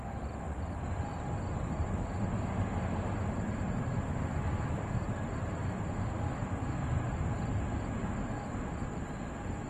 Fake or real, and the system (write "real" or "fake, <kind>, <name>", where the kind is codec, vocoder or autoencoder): real